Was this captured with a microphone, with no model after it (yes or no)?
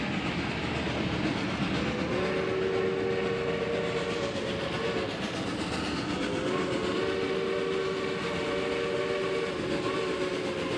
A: yes